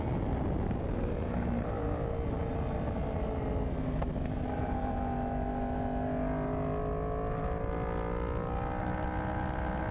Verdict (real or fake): real